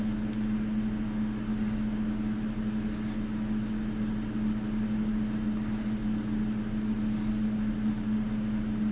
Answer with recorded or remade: recorded